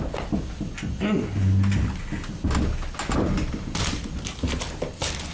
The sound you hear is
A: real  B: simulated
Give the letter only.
A